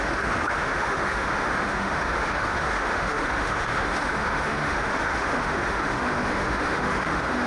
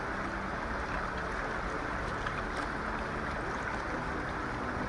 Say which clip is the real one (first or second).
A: second